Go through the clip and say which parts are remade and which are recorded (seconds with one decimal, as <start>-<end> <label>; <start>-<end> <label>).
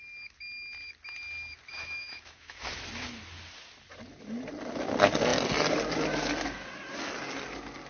0.0-1.7 recorded; 1.7-2.8 remade; 2.8-7.9 recorded